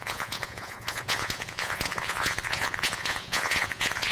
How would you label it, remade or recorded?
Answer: remade